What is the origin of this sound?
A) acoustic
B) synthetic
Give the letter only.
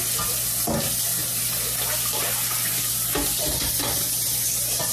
A